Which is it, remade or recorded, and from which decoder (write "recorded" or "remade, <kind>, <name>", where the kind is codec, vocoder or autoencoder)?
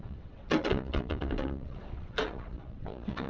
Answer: remade, vocoder, WaveNeXt